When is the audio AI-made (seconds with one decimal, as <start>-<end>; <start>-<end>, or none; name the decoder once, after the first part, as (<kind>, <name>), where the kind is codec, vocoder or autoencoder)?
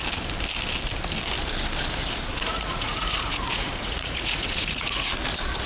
2.3-5.1 (vocoder, Vocos)